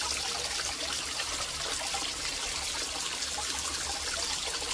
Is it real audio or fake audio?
real